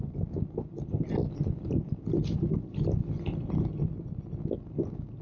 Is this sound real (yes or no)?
yes